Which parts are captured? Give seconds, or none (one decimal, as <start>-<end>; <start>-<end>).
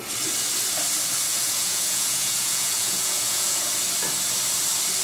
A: 0.0-1.3; 3.7-5.0